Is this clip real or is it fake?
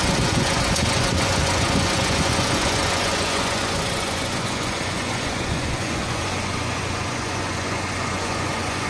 fake